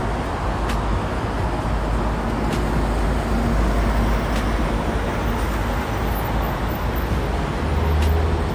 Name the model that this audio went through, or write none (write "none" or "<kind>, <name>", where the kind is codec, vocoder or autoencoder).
none